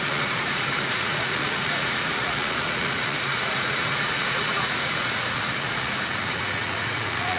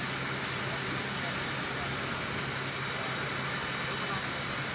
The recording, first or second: second